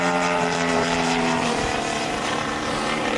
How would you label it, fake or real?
fake